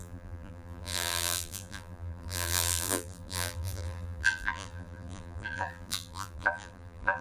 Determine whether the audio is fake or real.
fake